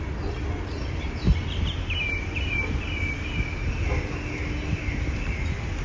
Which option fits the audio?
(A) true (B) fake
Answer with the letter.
A